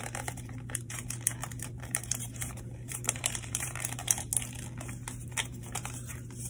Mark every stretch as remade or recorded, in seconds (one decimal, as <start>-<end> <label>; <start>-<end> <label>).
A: 0.0-4.3 remade; 4.3-5.4 recorded; 5.4-6.5 remade